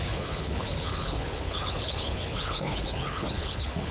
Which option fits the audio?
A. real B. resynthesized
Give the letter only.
B